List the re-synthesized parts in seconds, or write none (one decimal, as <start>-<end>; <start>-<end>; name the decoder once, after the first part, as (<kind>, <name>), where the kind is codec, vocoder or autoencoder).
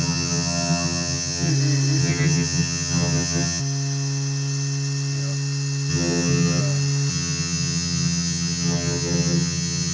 0.0-1.5 (vocoder, HiFi-GAN); 2.0-3.6; 5.9-6.6; 7.1-9.9